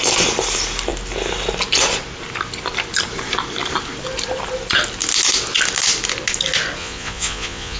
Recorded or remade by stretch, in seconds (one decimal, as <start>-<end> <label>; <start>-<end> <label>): 0.0-6.8 recorded; 6.8-7.8 remade